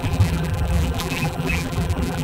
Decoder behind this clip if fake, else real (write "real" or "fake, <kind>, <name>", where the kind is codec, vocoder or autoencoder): fake, vocoder, BigVGAN v2